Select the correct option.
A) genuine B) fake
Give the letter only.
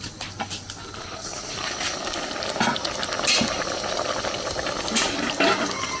A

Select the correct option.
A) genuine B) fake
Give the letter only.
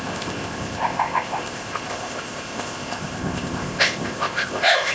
B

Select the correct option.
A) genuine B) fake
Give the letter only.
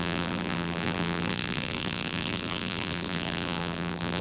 B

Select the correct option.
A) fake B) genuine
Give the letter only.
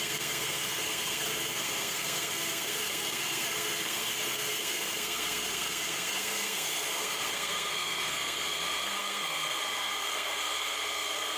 A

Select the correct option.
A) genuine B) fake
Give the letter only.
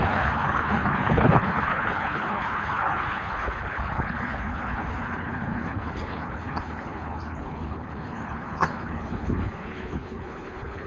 B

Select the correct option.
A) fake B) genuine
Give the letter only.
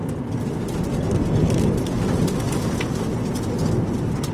B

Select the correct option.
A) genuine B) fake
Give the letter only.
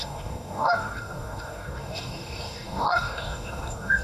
B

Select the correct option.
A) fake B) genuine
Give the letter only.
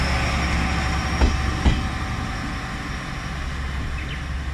B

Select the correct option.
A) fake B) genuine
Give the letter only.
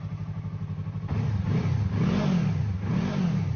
B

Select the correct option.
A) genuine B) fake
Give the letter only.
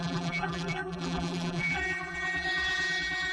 B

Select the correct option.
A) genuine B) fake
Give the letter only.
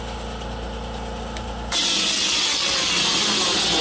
A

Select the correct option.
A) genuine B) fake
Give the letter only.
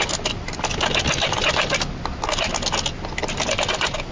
A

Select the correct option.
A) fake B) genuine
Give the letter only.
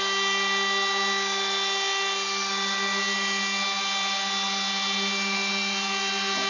B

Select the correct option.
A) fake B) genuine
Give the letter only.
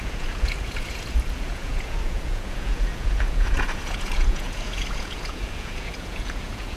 A